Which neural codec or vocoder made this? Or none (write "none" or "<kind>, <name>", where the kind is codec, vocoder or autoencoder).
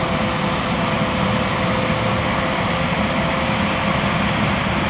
none